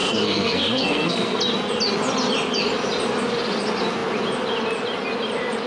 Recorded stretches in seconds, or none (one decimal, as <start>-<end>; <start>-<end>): 1.4-5.7